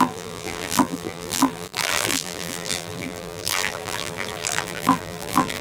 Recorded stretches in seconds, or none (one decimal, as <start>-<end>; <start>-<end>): none